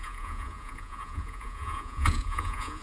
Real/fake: fake